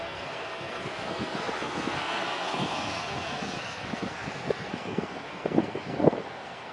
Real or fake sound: fake